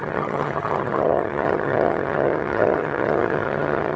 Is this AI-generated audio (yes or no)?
yes